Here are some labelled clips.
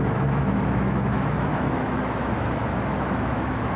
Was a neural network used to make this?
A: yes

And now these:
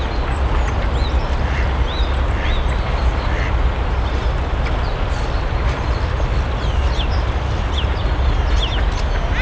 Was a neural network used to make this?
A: no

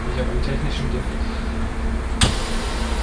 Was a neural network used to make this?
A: no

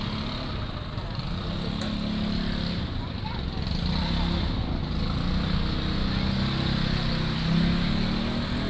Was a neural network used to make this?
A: no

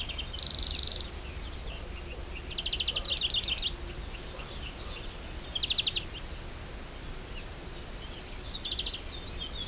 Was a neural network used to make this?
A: no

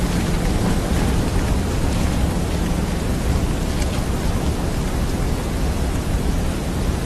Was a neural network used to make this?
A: no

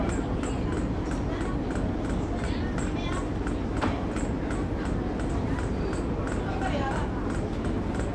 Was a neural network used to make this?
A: no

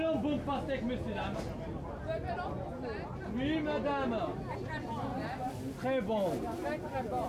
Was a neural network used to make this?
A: no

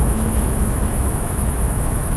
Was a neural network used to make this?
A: yes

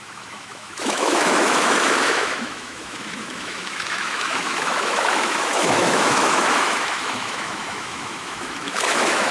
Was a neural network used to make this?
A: yes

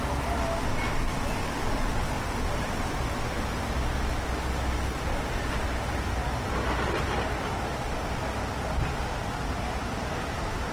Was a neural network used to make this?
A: no